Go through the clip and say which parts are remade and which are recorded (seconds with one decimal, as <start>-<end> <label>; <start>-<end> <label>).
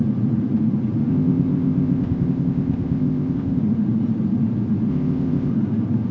0.0-1.1 recorded; 1.1-3.6 remade; 3.6-4.9 recorded; 4.9-5.5 remade; 5.5-6.1 recorded